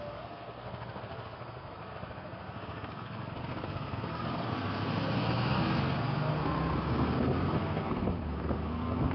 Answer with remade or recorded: remade